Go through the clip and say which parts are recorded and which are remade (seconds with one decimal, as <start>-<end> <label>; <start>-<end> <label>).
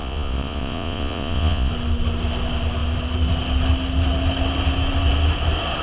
0.0-1.7 remade; 1.7-5.8 recorded